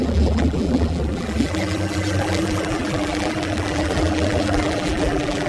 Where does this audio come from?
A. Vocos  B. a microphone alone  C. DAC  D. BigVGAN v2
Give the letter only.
D